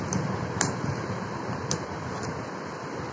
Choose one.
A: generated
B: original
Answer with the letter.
B